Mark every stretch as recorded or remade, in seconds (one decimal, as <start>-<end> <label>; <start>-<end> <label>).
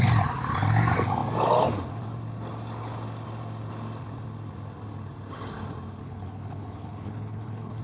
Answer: 0.0-6.0 recorded; 6.0-7.8 remade